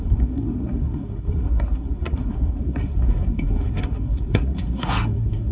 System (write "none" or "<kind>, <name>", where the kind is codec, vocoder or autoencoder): codec, SNAC